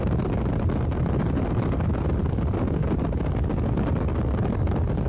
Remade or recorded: recorded